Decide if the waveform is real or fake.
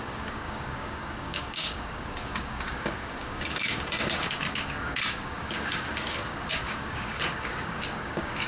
fake